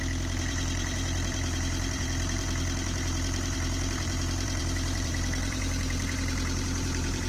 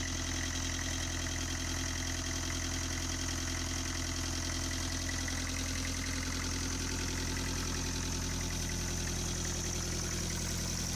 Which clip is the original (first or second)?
second